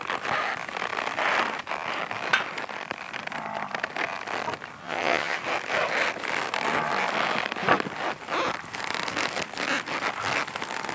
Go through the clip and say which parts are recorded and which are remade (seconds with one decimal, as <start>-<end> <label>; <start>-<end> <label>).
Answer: 0.0-4.8 recorded; 4.8-5.4 remade; 5.4-10.9 recorded